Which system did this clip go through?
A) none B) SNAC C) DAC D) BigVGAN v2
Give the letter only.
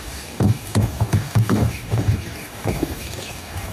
C